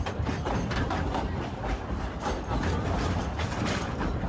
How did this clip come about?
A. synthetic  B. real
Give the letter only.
A